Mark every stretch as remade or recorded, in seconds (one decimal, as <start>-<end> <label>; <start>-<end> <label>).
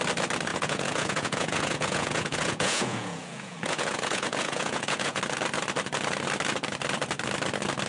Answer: 0.0-0.5 recorded; 0.5-5.2 remade; 5.2-7.9 recorded